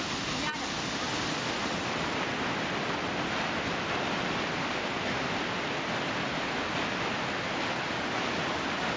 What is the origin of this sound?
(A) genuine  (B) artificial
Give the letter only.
A